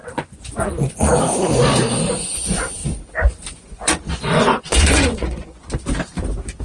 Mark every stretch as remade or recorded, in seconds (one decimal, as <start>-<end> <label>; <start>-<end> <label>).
0.0-1.1 remade; 1.1-2.1 recorded; 2.1-2.8 remade; 2.8-3.5 recorded; 3.5-5.6 remade; 5.6-6.6 recorded